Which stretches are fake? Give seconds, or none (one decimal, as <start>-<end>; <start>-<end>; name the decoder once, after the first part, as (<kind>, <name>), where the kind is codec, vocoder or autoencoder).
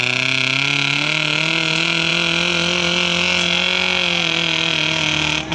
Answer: none